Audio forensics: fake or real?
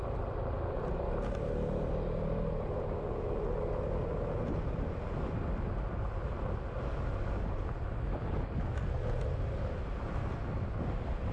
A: real